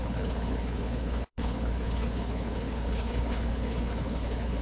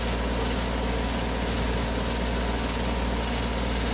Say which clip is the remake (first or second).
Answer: first